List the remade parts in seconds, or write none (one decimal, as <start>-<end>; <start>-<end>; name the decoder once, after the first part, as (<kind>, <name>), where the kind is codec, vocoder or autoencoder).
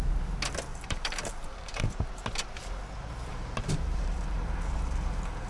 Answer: 0.7-1.8 (vocoder, BigVGAN v2); 3.3-5.5